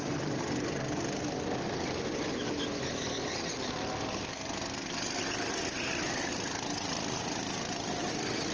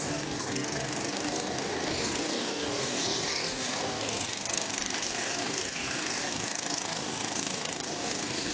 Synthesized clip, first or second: second